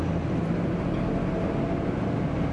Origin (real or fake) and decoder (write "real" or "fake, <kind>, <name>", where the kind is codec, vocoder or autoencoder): real